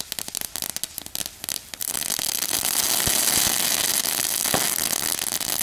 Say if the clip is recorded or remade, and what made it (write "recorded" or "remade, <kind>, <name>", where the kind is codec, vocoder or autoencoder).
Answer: recorded